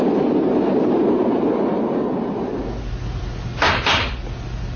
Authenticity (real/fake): real